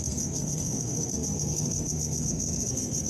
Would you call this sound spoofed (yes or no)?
yes